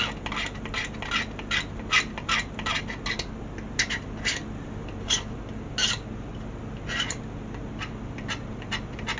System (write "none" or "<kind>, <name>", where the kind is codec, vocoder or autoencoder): none